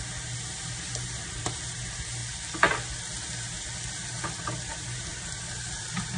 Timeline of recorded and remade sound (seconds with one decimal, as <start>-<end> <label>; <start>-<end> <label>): 0.0-2.2 remade; 2.2-3.4 recorded; 3.4-6.2 remade